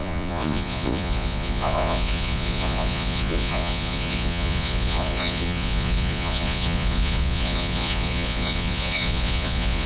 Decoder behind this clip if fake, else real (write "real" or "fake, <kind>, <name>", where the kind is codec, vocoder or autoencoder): fake, vocoder, Vocos